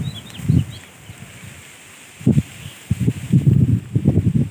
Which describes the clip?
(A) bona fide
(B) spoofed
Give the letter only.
A